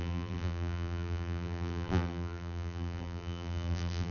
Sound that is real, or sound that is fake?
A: fake